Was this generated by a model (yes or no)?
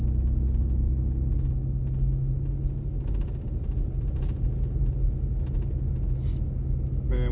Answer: no